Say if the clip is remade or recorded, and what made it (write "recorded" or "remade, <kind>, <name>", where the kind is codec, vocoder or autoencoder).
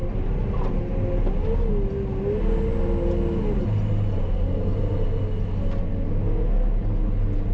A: recorded